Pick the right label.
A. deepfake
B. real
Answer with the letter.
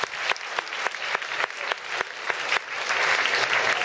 B